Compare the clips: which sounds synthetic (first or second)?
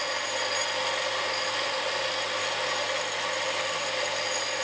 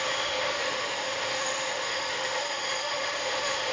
second